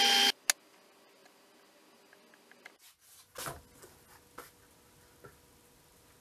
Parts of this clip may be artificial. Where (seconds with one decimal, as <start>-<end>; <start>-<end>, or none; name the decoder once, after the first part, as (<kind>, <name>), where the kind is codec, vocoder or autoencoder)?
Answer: none